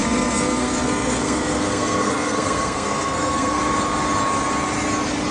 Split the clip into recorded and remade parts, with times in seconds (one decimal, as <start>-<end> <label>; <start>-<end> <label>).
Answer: 0.0-3.6 remade; 3.6-5.3 recorded